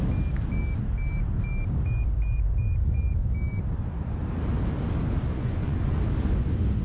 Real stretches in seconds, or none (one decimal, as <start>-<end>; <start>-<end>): 0.0-5.3; 6.0-6.8